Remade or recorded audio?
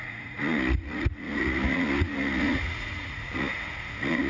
remade